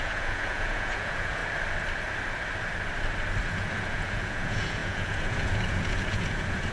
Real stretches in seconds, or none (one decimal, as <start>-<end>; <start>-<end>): 1.4-3.4